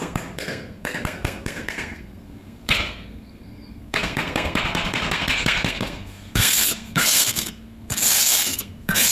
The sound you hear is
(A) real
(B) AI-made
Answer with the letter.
B